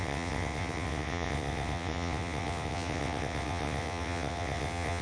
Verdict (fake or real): fake